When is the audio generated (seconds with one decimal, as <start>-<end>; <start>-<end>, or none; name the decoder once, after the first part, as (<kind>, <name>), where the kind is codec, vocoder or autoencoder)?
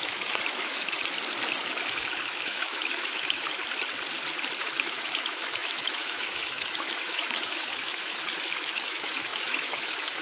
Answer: 0.0-1.0 (autoencoder, DAC-VAE); 1.6-3.6; 4.6-10.2